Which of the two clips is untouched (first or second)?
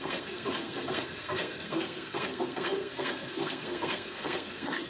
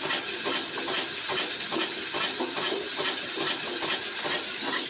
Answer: second